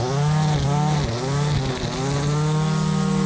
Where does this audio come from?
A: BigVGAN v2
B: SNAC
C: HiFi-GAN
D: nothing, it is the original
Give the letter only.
D